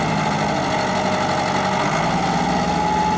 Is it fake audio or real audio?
real